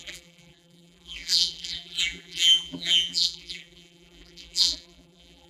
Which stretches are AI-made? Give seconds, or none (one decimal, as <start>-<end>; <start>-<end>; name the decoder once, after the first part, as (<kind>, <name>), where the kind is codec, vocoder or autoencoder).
0.0-5.5 (vocoder, BigVGAN v2)

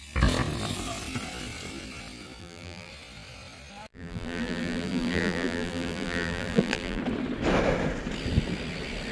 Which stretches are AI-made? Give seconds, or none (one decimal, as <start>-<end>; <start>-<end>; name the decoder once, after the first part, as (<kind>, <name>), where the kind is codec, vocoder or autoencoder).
2.4-2.9 (vocoder, BigVGAN v2); 3.9-7.0

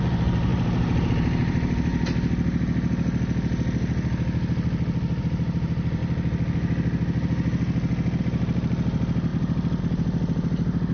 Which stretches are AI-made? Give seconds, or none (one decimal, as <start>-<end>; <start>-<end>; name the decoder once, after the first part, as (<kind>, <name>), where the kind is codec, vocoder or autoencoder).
0.0-1.9 (vocoder, BigVGAN v2); 5.2-6.0; 8.2-9.3; 9.8-10.9

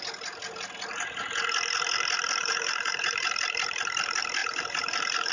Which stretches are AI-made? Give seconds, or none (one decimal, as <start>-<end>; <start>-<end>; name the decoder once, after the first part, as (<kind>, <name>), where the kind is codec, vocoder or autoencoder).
2.4-3.3 (vocoder, BigVGAN v2); 4.4-5.3

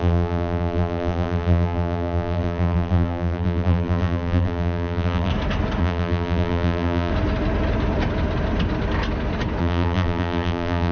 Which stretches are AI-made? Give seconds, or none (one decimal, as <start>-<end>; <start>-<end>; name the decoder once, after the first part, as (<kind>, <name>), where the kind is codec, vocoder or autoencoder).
0.0-5.3 (vocoder, BigVGAN v2); 5.8-7.1; 9.6-10.9

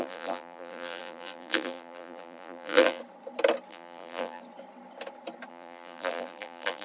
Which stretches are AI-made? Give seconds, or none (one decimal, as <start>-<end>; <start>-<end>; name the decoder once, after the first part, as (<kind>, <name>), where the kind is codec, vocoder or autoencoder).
0.0-3.0 (vocoder, BigVGAN v2); 3.7-4.4; 5.5-6.8

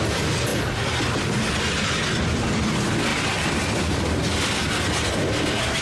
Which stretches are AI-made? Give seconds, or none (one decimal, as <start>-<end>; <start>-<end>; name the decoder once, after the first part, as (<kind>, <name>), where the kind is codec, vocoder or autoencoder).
none